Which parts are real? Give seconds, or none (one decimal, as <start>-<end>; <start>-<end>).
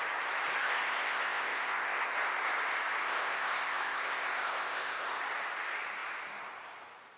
0.0-0.6; 2.1-3.0; 5.2-7.2